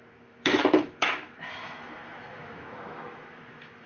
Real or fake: fake